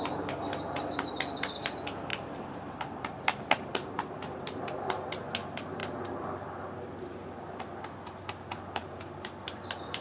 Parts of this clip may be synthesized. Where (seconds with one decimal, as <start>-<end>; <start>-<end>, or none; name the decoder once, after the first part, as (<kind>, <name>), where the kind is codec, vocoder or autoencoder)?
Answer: 2.1-4.6 (vocoder, BigVGAN v2); 8.8-10.0